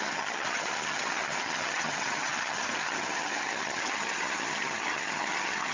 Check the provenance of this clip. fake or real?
fake